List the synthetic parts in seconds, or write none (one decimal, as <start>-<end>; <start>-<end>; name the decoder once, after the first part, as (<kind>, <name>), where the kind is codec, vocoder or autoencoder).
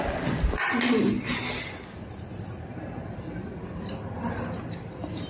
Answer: none